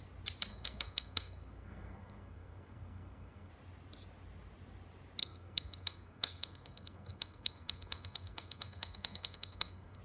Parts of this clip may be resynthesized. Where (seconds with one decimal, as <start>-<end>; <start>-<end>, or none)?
0.5-3.5; 5.2-10.0